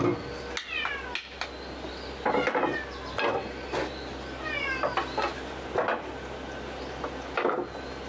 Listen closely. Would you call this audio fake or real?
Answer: real